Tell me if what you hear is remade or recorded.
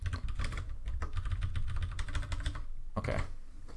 recorded